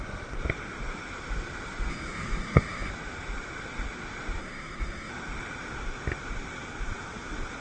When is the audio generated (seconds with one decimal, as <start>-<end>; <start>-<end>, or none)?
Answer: 1.9-2.9; 4.4-5.1